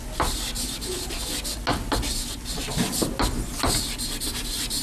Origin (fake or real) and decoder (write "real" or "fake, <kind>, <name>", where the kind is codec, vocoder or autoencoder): real